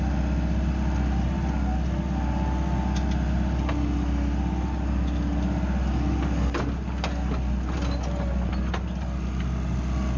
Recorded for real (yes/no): yes